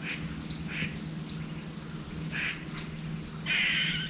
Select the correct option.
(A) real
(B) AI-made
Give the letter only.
A